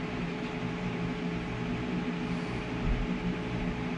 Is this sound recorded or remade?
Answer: recorded